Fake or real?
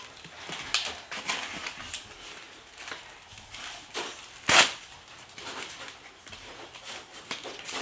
real